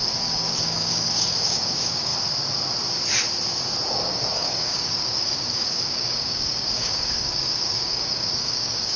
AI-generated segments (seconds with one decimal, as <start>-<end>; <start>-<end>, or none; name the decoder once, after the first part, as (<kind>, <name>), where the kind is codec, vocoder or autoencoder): 0.0-2.1 (codec, DAC); 3.9-9.0